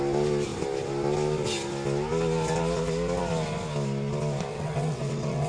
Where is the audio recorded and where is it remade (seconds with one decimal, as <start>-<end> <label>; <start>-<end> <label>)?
0.0-4.5 recorded; 4.5-5.5 remade